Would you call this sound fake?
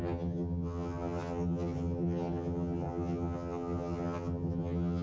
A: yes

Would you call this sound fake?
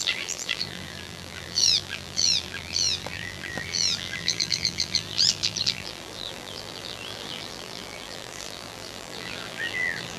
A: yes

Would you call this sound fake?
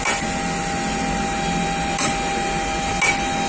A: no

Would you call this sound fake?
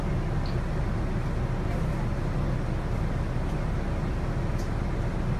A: no